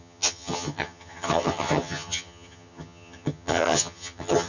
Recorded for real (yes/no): no